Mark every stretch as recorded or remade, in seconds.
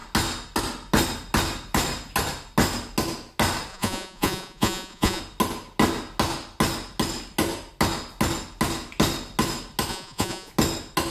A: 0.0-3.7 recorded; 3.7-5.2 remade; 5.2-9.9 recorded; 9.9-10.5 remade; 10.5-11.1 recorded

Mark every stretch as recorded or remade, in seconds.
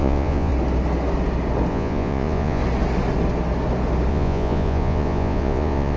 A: 0.0-0.5 remade; 0.5-1.7 recorded; 1.7-2.6 remade; 2.6-4.1 recorded; 4.1-6.0 remade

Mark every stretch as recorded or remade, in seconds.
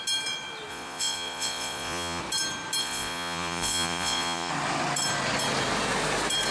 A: 0.0-0.7 recorded; 0.7-2.2 remade; 2.2-2.8 recorded; 2.8-4.5 remade; 4.5-6.5 recorded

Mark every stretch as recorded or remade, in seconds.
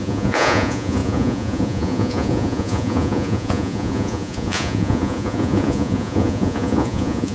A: 0.0-7.3 remade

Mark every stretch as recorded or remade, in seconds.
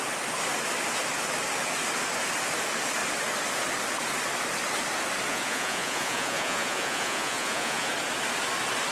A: 0.0-5.3 recorded; 5.3-7.9 remade; 7.9-8.9 recorded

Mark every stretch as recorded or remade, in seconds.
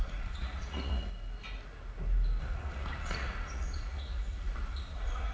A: 0.0-1.1 remade; 1.1-2.4 recorded; 2.4-5.3 remade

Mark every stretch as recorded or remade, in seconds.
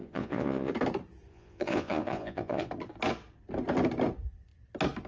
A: 0.0-0.7 remade; 0.7-1.3 recorded; 1.3-2.7 remade; 2.7-5.1 recorded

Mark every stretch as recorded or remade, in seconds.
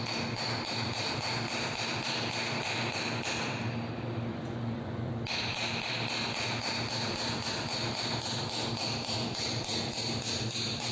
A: 0.0-4.3 recorded; 4.3-5.1 remade; 5.1-10.9 recorded